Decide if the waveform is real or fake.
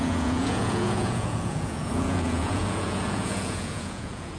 fake